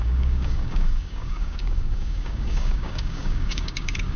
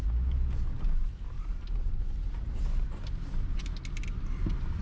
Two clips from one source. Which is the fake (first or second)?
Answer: first